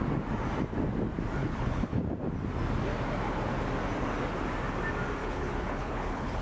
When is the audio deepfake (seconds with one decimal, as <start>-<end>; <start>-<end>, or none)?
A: 1.4-2.0; 5.2-6.4